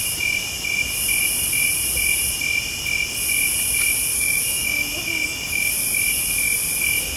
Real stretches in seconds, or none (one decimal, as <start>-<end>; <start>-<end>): 0.0-4.1; 5.7-7.2